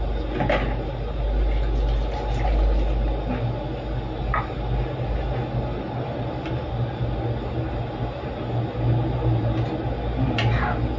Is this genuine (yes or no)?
yes